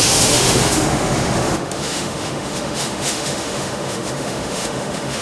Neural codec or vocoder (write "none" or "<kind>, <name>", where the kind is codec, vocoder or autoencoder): autoencoder, DAC-VAE